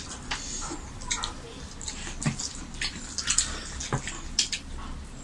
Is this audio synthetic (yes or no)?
no